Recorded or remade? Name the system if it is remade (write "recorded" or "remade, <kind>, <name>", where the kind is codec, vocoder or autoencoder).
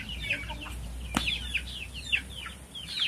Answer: recorded